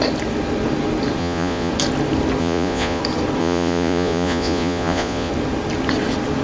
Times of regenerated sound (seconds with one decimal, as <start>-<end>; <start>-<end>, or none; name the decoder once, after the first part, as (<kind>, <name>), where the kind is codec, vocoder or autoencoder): 1.2-1.7 (vocoder, Vocos); 2.4-3.0; 3.4-5.3